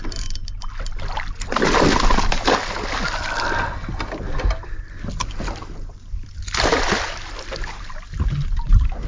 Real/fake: real